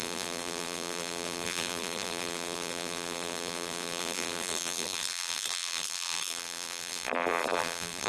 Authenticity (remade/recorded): remade